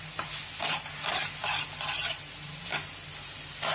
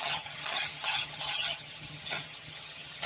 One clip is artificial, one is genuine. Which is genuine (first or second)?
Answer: first